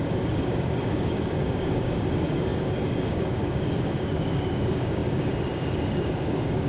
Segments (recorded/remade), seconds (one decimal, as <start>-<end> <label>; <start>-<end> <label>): 0.0-6.7 remade